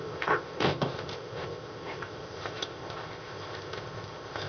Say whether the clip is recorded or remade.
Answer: remade